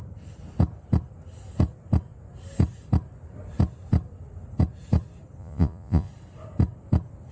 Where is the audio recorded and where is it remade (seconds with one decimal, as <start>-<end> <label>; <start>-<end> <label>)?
0.0-5.4 recorded; 5.4-6.1 remade; 6.1-7.3 recorded